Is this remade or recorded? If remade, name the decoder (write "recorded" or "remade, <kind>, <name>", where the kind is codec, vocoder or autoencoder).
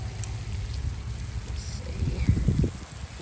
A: recorded